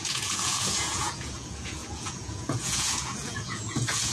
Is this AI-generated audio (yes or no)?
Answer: yes